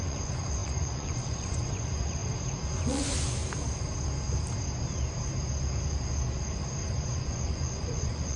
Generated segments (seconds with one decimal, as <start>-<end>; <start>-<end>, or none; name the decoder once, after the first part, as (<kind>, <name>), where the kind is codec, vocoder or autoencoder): 0.0-2.2 (vocoder, Vocos); 2.8-3.4; 7.0-8.4